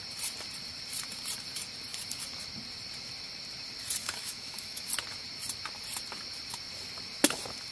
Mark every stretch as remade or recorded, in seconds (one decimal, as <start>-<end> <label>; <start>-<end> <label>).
0.0-4.0 recorded; 4.0-4.8 remade; 4.8-7.7 recorded